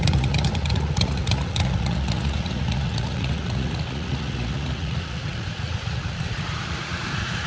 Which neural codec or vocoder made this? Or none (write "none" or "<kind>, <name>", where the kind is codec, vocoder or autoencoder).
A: vocoder, Vocos